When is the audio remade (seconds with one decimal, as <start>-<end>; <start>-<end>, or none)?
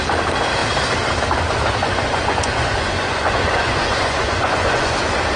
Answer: 1.8-5.0